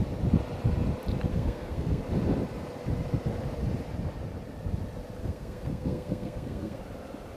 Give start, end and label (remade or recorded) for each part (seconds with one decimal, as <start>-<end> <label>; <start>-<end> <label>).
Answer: 0.0-1.3 recorded; 1.3-2.0 remade; 2.0-5.2 recorded; 5.2-6.8 remade; 6.8-7.4 recorded